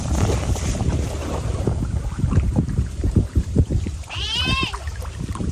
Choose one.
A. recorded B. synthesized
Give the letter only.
B